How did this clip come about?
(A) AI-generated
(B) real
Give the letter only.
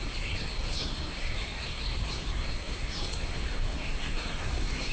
A